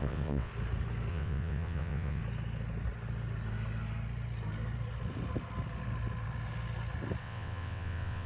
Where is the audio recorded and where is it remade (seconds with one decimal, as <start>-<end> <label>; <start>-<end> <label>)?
0.0-0.5 remade; 0.5-1.1 recorded; 1.1-2.2 remade; 2.2-7.2 recorded; 7.2-8.3 remade